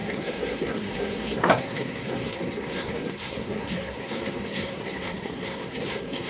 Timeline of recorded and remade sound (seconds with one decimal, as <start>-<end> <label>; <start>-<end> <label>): 0.0-6.3 remade